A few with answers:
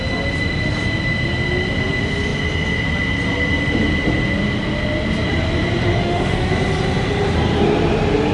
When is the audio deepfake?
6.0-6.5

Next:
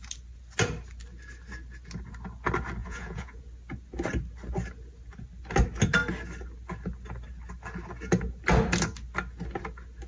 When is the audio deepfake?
2.8-3.4

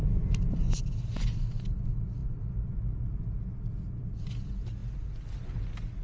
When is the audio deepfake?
none

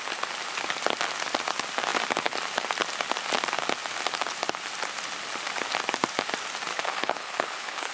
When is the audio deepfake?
6.7-7.9